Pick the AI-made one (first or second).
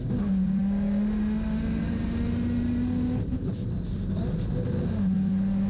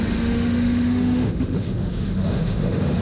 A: second